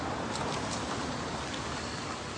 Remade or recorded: recorded